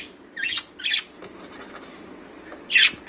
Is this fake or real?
real